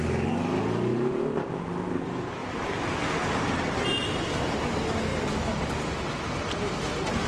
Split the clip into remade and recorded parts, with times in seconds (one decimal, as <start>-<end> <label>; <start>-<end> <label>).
0.0-0.9 recorded; 0.9-1.5 remade; 1.5-2.4 recorded; 2.4-2.9 remade; 2.9-7.3 recorded